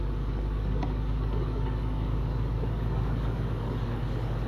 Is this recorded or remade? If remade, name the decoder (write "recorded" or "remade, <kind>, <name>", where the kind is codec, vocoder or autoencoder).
remade, codec, DAC